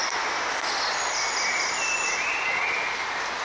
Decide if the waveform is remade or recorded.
recorded